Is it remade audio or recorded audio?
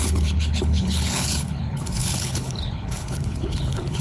remade